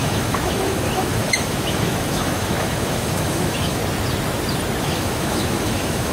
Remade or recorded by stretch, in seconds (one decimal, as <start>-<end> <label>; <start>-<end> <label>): 0.0-3.8 remade; 3.8-4.8 recorded; 4.8-6.1 remade